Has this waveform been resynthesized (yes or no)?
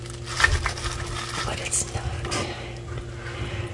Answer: no